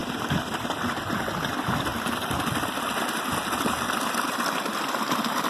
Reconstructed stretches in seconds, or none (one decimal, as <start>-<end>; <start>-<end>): 0.0-1.1; 1.9-4.9